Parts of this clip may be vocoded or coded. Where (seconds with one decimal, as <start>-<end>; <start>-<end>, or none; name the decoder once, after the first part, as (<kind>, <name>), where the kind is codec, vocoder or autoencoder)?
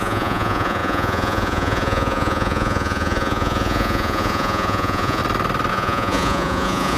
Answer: 0.0-5.2 (vocoder, Vocos); 5.7-7.0